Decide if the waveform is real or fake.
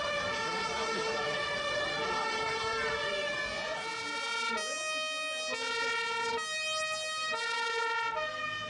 real